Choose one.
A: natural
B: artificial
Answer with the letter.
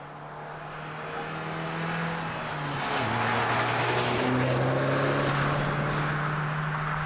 A